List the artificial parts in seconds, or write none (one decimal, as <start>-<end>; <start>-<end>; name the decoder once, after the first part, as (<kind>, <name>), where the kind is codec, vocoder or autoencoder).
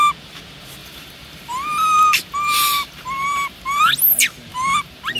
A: 0.8-3.8 (vocoder, BigVGAN v2); 4.5-5.2